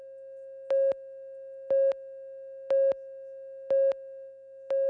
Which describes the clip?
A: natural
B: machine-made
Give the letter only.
A